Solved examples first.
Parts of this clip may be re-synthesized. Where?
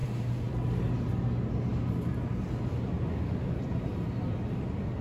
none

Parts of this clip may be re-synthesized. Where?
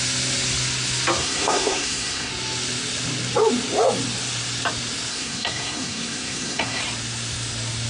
1.2-2.3 (codec, SNAC); 5.1-6.8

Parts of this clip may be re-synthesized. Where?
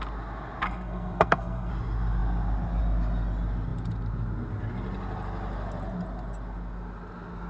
0.6-1.7 (codec, SNAC)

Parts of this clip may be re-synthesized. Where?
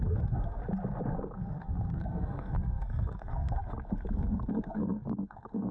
0.0-0.6 (codec, SNAC); 1.1-3.6; 4.1-5.7